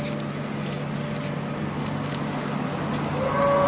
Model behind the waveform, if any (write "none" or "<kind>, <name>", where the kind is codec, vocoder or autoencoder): none